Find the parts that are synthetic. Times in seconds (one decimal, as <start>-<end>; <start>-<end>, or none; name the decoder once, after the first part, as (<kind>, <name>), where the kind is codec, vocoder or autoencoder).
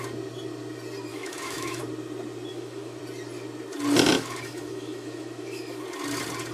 1.1-1.8 (autoencoder, DAC-VAE); 2.5-3.0; 4.1-5.8